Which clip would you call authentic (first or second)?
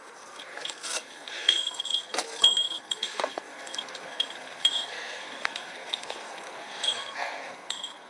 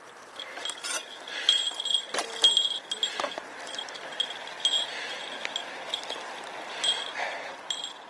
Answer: second